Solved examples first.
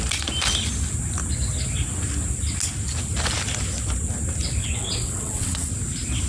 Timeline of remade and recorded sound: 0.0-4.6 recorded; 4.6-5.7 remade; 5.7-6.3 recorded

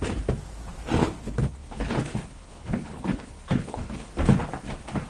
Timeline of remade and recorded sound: 0.0-1.0 recorded; 1.0-4.1 remade; 4.1-5.1 recorded